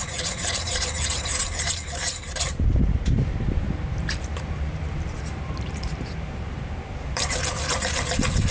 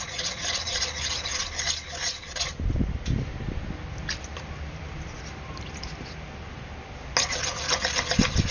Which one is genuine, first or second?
second